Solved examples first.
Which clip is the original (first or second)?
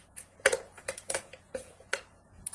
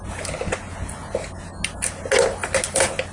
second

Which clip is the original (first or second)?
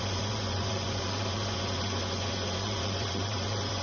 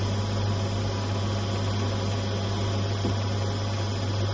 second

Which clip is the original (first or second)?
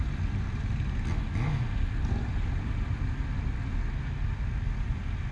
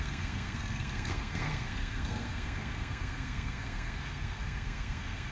first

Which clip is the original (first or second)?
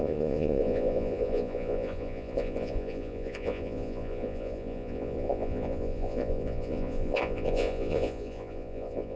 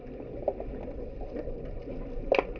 second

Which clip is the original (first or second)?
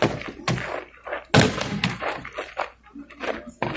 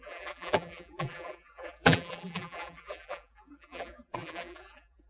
first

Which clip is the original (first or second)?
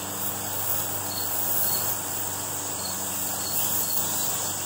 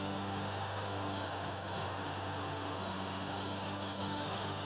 first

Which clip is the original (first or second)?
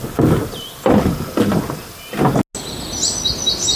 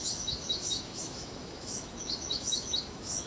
first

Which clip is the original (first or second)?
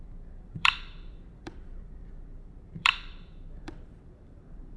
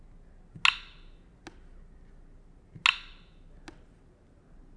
second